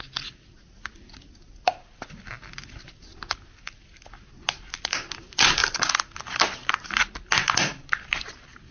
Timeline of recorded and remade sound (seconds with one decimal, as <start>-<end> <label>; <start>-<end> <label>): 0.0-3.1 recorded; 3.1-4.1 remade; 4.1-8.7 recorded